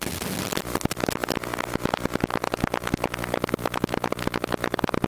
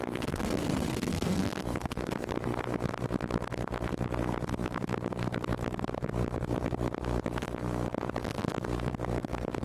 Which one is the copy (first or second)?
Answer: second